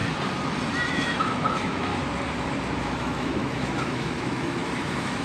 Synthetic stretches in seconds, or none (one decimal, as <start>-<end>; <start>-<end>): 0.9-1.9; 2.8-5.2